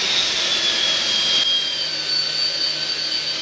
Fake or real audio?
real